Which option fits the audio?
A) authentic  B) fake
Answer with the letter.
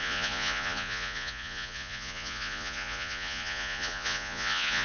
B